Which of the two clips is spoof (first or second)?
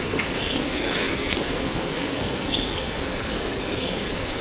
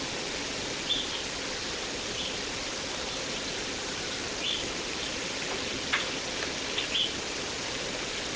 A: first